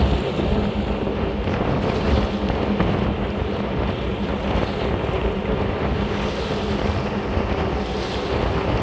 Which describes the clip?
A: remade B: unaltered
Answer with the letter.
B